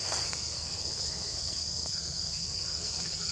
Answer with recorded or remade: remade